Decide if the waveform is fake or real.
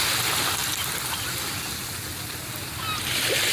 real